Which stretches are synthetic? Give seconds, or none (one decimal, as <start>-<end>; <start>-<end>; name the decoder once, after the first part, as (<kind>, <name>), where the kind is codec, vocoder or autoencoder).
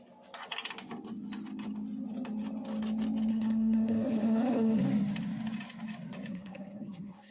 3.3-4.8 (codec, SNAC); 6.3-7.3